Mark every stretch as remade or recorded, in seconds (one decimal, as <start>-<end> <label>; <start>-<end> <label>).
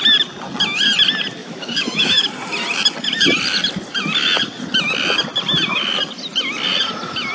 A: 0.0-1.4 recorded; 1.4-2.3 remade; 2.3-7.3 recorded